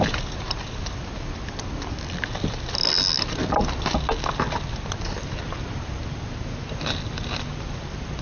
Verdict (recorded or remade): recorded